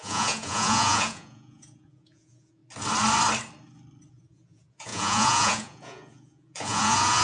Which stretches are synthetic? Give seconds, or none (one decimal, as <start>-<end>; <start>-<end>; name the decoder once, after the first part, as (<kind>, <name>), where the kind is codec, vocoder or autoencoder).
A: 0.0-2.6 (vocoder, Vocos); 4.1-7.2